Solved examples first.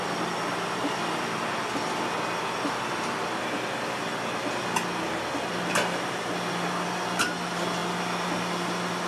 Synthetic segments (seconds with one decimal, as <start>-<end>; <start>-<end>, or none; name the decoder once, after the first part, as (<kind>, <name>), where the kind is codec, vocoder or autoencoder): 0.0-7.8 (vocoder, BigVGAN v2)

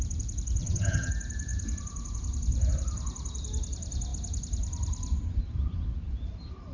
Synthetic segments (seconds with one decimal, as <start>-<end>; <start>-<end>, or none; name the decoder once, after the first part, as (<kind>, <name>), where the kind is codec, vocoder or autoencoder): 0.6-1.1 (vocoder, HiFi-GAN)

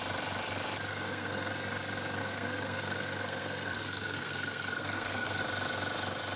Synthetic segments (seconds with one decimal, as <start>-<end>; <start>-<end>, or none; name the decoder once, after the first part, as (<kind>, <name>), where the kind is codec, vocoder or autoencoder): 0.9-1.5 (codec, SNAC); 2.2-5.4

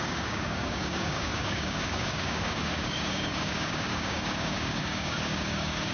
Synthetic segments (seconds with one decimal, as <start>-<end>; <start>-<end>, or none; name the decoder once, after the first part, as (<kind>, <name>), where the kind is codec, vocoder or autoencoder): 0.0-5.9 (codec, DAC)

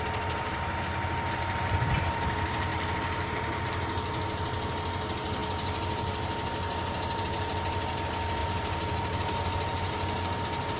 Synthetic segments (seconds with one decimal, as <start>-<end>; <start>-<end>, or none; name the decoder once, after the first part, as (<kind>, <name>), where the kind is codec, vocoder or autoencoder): 2.7-3.6 (vocoder, BigVGAN v2); 8.4-10.4

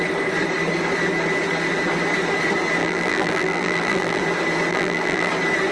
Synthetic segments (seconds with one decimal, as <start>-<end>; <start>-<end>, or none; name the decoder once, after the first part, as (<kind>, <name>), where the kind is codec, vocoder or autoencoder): 2.8-4.2 (vocoder, BigVGAN v2); 4.7-5.3